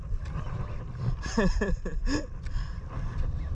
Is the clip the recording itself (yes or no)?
yes